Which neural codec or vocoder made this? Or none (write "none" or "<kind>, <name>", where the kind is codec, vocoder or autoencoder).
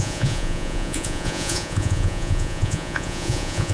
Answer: vocoder, Vocos